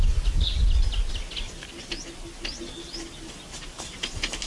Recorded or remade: recorded